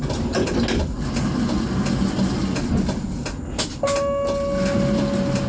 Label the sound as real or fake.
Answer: real